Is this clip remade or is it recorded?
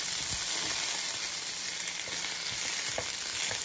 recorded